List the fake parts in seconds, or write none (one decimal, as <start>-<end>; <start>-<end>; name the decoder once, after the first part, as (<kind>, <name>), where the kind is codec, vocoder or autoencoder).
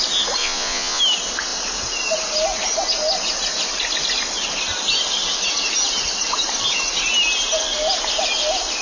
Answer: 0.4-1.0 (vocoder, Vocos)